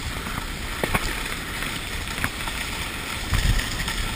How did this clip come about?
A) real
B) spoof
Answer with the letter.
A